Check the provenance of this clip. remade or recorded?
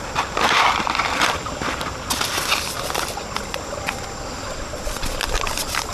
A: remade